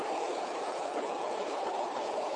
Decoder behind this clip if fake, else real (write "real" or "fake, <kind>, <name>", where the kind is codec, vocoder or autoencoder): fake, codec, HILCodec